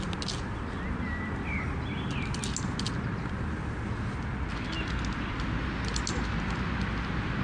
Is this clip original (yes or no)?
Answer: yes